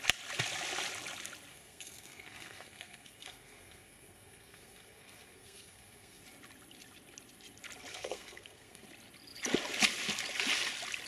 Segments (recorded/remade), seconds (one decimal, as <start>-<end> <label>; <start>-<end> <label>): 0.0-1.5 recorded; 1.5-6.2 remade; 6.2-7.9 recorded; 7.9-8.8 remade; 8.8-11.1 recorded